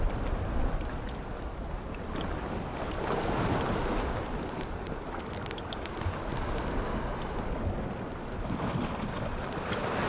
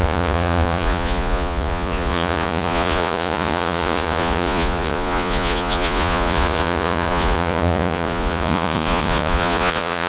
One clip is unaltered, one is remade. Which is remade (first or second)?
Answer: second